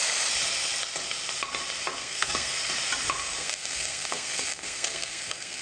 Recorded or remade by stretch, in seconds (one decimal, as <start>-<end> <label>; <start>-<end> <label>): 0.0-2.0 recorded; 2.0-2.5 remade; 2.5-3.4 recorded; 3.4-5.6 remade